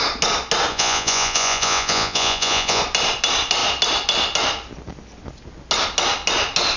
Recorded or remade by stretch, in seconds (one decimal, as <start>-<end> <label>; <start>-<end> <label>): 0.0-0.7 recorded; 0.7-2.8 remade; 2.8-6.8 recorded